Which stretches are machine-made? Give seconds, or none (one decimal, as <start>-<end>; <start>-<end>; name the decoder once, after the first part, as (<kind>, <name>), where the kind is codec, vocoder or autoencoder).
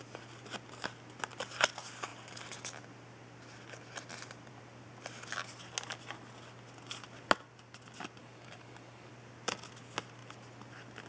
8.2-9.1 (codec, DAC)